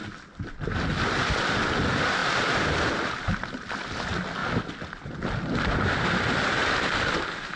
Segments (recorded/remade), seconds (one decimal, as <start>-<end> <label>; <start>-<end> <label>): 0.0-7.6 recorded